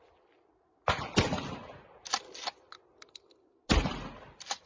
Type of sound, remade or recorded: recorded